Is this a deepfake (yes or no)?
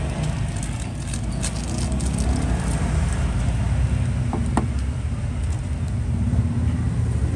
no